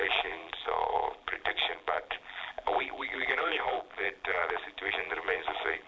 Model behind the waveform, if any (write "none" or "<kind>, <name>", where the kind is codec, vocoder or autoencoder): vocoder, BigVGAN v2